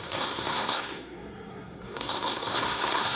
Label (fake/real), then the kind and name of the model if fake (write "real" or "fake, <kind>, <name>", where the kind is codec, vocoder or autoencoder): fake, codec, SNAC